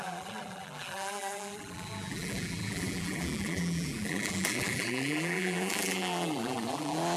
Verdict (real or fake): fake